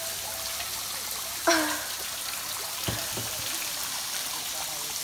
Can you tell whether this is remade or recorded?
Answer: recorded